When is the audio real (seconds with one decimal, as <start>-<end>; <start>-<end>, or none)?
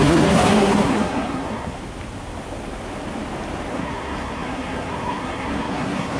1.8-3.7